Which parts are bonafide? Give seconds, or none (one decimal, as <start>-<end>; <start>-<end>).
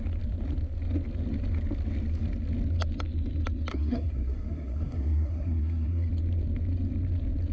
0.0-3.7; 6.1-7.5